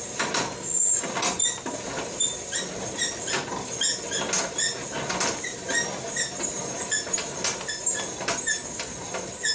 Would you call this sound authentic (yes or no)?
yes